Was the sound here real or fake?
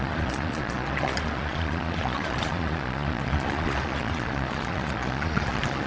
fake